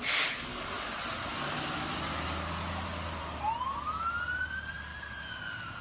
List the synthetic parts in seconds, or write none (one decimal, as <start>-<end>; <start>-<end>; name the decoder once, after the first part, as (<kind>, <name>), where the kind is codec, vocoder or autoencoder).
none